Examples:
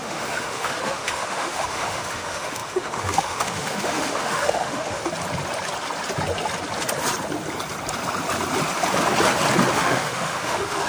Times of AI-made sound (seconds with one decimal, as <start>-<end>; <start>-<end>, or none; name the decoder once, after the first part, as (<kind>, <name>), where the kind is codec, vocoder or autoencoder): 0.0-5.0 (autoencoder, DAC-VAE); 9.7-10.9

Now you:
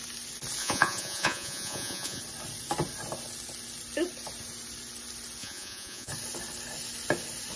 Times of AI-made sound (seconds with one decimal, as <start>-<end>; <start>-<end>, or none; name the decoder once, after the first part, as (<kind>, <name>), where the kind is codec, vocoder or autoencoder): 0.6-2.2 (vocoder, Vocos); 5.4-6.1

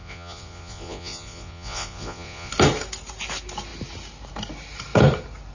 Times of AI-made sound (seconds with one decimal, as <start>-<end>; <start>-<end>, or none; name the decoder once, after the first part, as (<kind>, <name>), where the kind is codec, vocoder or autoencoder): 0.0-2.5 (vocoder, Vocos)

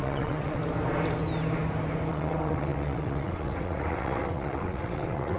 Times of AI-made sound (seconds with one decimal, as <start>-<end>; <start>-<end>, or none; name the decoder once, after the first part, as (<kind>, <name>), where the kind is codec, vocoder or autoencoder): 0.0-0.6 (vocoder, WaveNeXt); 2.1-5.4

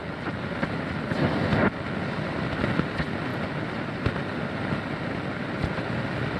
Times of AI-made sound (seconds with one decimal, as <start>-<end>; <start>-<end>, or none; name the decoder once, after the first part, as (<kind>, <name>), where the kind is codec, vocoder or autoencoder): none

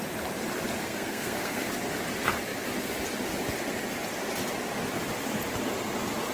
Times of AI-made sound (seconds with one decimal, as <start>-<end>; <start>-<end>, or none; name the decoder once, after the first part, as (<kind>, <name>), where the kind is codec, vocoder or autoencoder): 0.8-1.7 (codec, SNAC)

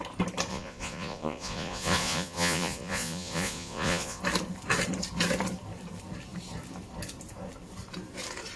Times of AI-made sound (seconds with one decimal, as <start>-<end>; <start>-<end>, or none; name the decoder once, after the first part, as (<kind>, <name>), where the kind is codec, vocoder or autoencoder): 0.5-4.2 (vocoder, Vocos)